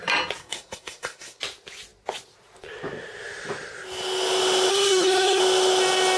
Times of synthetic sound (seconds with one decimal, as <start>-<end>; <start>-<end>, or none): 0.4-1.4; 4.7-5.4